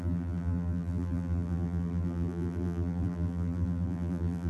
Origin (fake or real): fake